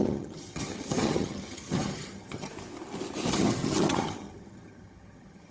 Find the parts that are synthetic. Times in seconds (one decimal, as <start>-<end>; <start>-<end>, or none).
0.0-2.5; 3.3-5.5